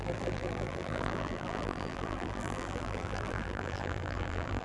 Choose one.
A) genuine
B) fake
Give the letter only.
B